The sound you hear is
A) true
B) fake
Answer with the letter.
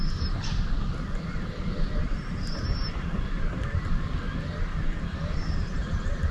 A